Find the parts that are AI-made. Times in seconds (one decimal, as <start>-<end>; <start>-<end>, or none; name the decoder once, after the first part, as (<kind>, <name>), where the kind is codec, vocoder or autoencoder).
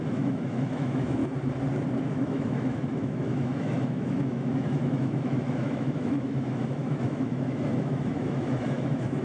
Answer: 0.0-1.2 (autoencoder, DAC-VAE); 2.1-9.2